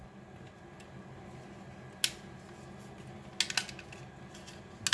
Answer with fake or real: real